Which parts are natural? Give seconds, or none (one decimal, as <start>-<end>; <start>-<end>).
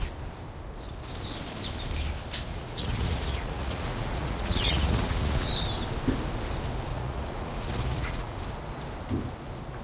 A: 0.0-2.5; 5.5-6.9; 8.4-9.8